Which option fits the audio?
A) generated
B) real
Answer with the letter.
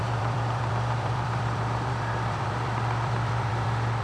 A